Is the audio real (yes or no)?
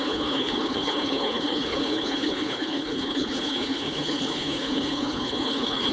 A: no